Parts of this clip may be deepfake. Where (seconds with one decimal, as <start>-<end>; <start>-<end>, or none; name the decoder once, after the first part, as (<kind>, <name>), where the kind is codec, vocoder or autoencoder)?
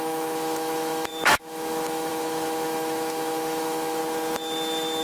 0.0-4.0 (autoencoder, DAC-VAE)